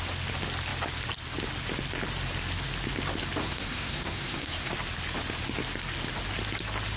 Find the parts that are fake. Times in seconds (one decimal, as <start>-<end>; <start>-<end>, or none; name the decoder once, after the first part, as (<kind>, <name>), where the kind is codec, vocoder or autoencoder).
3.4-4.7 (codec, SNAC)